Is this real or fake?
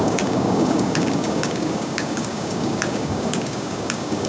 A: fake